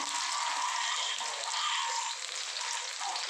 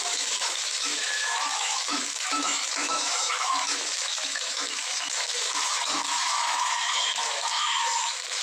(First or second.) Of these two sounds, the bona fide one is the first